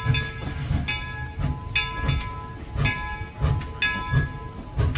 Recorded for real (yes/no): yes